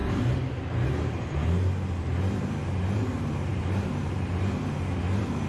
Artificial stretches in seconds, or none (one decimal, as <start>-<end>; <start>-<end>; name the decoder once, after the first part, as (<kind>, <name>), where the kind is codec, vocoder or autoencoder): 3.5-4.3 (vocoder, BigVGAN v2)